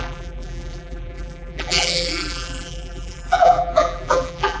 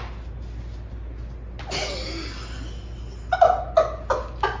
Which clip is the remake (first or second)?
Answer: first